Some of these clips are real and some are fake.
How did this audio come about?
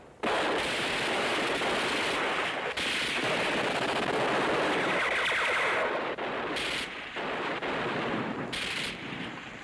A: real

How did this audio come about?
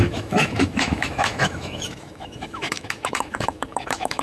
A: fake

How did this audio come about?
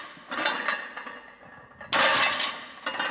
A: real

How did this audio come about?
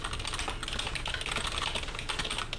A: real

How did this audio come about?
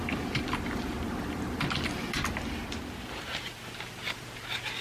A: real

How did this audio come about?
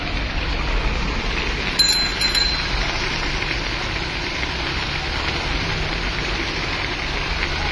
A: real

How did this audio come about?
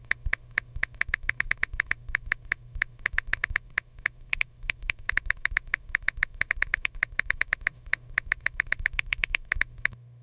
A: fake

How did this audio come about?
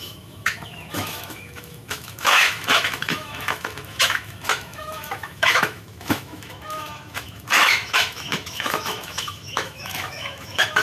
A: fake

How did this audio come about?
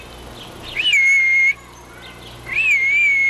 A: real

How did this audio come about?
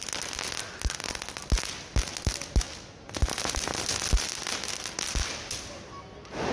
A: real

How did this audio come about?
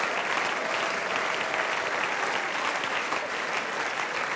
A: real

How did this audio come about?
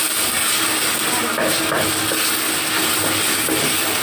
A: real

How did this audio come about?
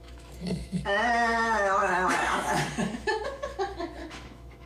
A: fake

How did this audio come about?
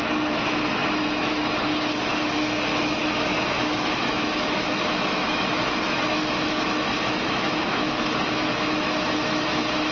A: fake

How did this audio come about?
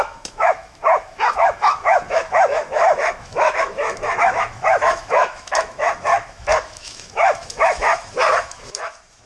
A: fake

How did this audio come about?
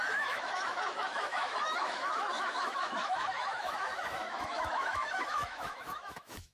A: fake